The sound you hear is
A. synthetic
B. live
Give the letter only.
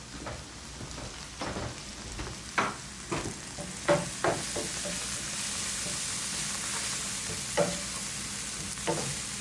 B